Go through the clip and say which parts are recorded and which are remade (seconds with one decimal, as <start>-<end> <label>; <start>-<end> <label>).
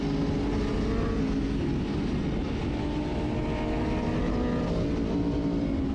0.0-5.9 recorded